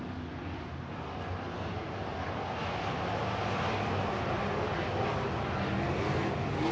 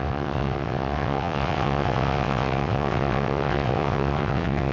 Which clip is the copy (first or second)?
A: second